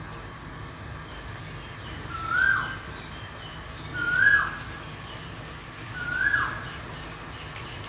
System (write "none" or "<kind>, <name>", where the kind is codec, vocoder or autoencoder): none